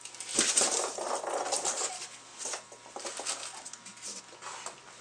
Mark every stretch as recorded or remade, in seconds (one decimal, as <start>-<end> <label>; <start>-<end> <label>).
0.0-5.0 recorded